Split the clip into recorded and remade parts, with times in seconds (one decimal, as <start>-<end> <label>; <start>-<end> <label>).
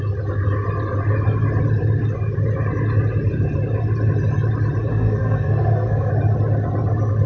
0.0-4.9 recorded; 4.9-6.1 remade; 6.1-7.3 recorded